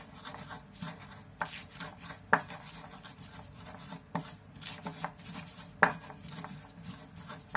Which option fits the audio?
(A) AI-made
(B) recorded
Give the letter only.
B